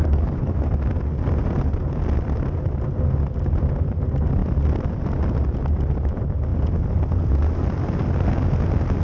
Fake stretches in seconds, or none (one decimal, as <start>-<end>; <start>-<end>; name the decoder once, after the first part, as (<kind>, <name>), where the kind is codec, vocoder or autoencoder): 0.0-0.6 (codec, DAC)